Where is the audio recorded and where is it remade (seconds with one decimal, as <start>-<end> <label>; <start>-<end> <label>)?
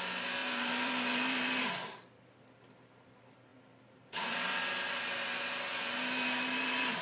0.0-7.0 remade